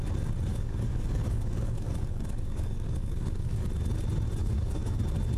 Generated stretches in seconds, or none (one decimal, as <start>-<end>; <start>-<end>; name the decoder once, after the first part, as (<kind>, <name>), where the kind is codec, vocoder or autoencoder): 0.5-3.7 (codec, DAC); 4.4-5.0